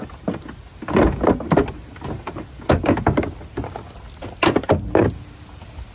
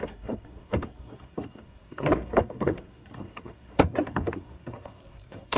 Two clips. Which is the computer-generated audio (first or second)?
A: second